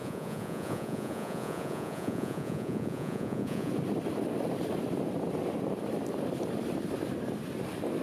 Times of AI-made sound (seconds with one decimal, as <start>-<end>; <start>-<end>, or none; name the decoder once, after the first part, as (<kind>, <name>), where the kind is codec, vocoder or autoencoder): 0.0-3.7 (vocoder, Vocos)

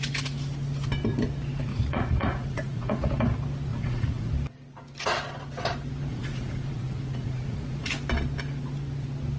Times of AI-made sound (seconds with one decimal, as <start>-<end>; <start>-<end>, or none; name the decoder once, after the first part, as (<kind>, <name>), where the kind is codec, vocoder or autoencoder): 1.7-3.1 (vocoder, Vocos); 3.7-4.3; 6.1-7.9

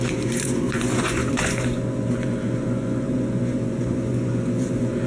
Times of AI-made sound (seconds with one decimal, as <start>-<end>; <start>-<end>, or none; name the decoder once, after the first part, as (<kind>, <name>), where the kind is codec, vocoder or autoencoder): 0.0-5.1 (vocoder, Vocos)

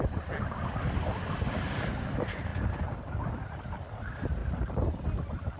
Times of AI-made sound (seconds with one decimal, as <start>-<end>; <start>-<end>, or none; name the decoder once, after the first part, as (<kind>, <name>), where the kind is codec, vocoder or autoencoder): none

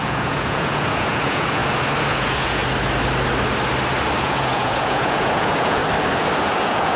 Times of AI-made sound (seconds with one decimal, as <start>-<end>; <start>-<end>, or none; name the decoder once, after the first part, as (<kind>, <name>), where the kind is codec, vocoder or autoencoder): 0.0-1.6 (vocoder, Vocos); 2.1-2.6; 4.2-5.8; 6.4-7.0

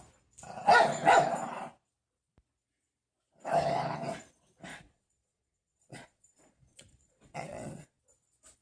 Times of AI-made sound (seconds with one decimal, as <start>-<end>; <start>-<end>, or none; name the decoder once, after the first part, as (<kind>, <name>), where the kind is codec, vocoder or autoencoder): 4.7-8.0 (vocoder, Vocos)